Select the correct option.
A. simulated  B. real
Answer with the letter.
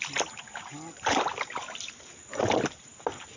B